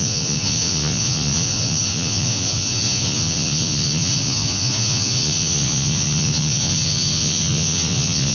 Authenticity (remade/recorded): remade